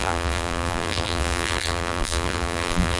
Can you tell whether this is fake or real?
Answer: fake